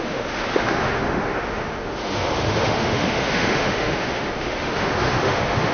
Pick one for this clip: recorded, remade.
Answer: remade